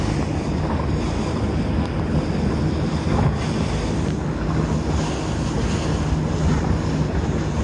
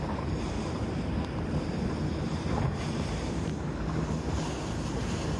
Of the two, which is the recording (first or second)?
first